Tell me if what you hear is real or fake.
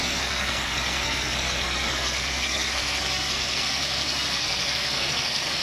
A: fake